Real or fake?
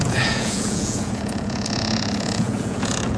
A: fake